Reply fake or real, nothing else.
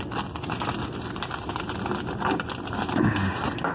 real